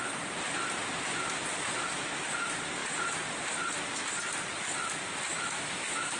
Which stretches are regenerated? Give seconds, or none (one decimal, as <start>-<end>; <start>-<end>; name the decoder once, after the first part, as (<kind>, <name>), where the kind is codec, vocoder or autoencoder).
5.3-6.2 (autoencoder, DAC-VAE)